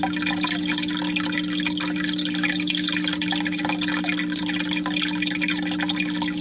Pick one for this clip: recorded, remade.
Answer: recorded